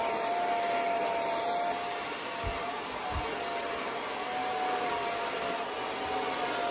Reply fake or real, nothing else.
real